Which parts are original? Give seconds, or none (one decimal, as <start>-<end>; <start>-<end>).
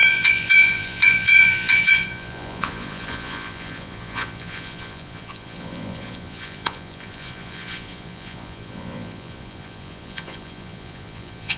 none